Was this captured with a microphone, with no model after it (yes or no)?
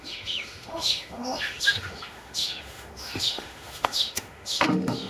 no